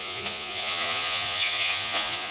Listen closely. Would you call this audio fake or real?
fake